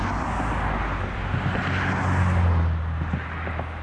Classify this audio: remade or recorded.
recorded